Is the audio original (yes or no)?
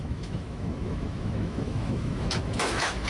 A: no